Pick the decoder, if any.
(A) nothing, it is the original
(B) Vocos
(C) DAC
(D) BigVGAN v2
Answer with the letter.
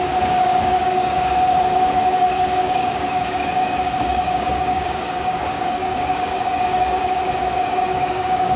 C